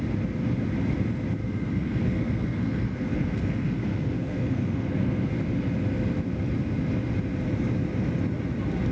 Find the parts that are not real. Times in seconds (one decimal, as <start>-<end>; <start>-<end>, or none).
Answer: 1.4-5.3